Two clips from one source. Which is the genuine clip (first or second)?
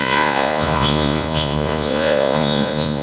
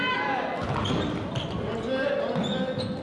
second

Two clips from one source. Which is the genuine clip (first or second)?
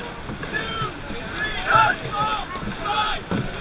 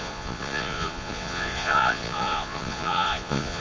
first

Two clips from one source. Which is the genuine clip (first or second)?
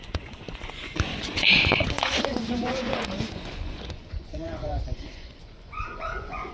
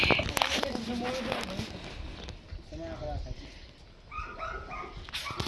second